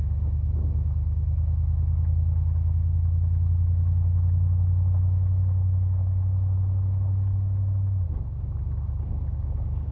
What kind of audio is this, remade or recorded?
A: recorded